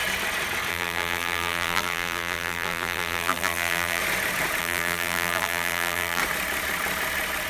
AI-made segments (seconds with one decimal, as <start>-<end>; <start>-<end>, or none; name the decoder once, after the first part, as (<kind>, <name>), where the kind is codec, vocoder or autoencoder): 0.7-4.0 (vocoder, BigVGAN v2); 4.6-6.2